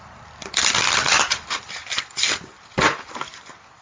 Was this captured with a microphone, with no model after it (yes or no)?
yes